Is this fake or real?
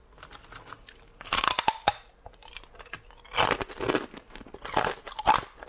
real